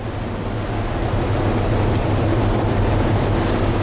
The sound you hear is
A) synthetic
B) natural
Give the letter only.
B